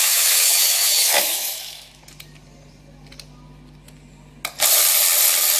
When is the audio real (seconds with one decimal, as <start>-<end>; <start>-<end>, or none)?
2.0-5.6